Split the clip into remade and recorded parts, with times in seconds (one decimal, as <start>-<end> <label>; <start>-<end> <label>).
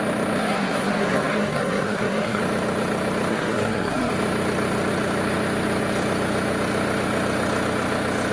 0.0-0.4 recorded; 0.4-2.4 remade; 2.4-3.3 recorded; 3.3-4.1 remade; 4.1-8.3 recorded